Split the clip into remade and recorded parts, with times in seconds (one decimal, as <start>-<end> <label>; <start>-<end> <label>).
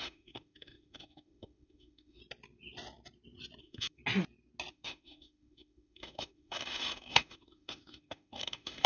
0.0-2.2 remade; 2.2-3.6 recorded; 3.6-4.0 remade; 4.0-4.7 recorded; 4.7-8.9 remade